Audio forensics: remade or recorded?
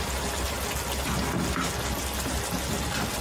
recorded